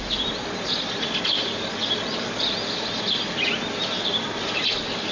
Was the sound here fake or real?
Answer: real